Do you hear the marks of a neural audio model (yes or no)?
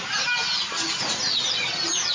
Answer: no